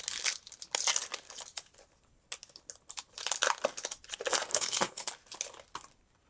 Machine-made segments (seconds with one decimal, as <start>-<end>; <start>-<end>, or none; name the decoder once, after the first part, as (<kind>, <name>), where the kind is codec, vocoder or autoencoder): 4.5-5.1 (codec, SNAC)